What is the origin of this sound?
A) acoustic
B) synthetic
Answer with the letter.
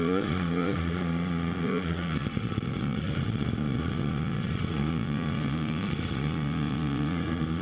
B